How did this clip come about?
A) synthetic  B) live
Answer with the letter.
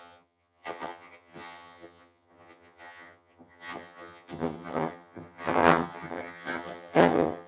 A